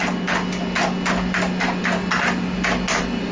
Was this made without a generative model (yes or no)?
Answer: yes